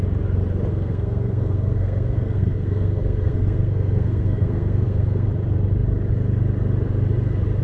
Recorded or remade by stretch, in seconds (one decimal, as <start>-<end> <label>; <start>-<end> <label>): 0.0-0.7 recorded; 0.7-5.3 remade; 5.3-7.6 recorded